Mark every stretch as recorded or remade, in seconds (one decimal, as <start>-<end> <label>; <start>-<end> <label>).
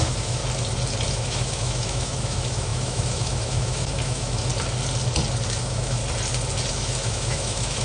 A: 0.0-0.4 remade; 0.4-1.1 recorded; 1.1-4.5 remade; 4.5-5.6 recorded; 5.6-6.0 remade; 6.0-6.7 recorded; 6.7-7.8 remade